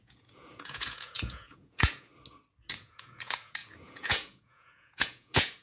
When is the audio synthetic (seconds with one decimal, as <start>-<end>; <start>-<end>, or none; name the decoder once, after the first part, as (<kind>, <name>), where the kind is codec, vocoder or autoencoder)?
0.0-2.1 (vocoder, Vocos); 2.7-5.6